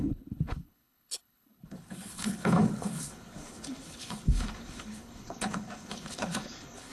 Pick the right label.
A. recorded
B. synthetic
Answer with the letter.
B